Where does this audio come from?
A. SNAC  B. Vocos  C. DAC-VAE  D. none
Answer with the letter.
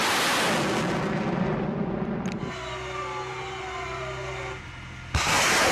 D